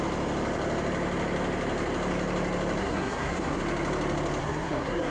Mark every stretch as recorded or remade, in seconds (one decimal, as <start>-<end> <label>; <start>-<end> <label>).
0.0-2.8 recorded; 2.8-3.6 remade; 3.6-4.4 recorded; 4.4-5.1 remade